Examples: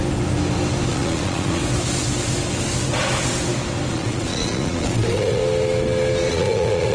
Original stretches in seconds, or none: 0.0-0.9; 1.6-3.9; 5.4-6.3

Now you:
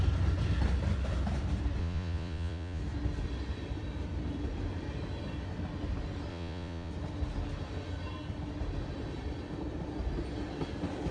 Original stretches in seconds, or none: 0.0-1.8; 2.8-6.3; 6.9-11.1

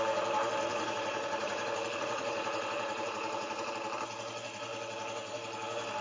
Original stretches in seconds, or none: 0.0-0.7; 3.7-6.0

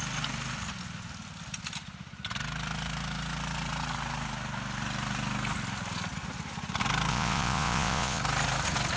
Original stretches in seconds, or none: 0.0-7.1; 8.2-9.0

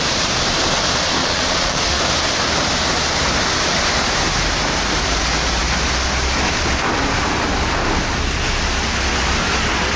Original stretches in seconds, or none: 0.0-1.2; 2.0-10.0